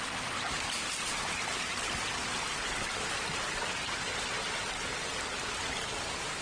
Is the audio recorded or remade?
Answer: recorded